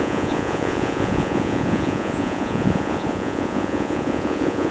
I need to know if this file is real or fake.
fake